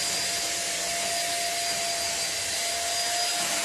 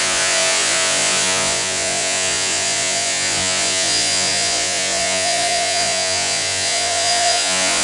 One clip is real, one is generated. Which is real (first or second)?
first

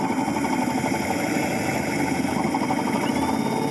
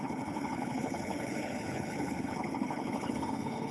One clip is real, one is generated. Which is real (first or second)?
first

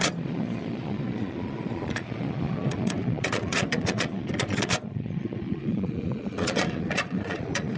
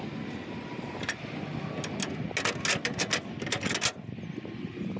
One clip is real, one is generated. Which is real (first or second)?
second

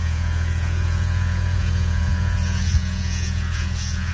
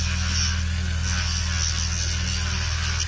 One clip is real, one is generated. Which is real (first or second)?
second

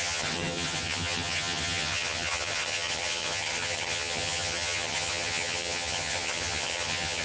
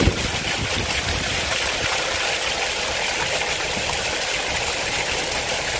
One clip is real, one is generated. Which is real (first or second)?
second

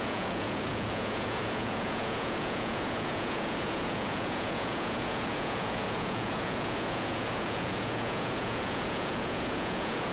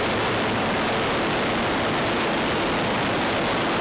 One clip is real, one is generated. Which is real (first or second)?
second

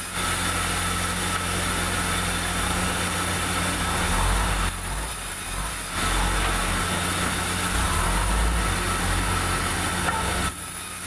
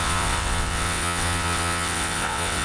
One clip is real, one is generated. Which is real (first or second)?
first